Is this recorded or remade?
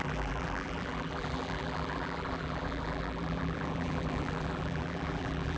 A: remade